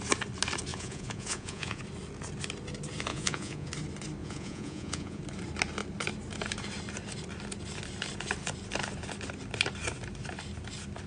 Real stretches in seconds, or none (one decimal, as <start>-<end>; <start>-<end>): 0.0-0.7; 1.8-3.1; 3.7-4.2; 5.2-11.1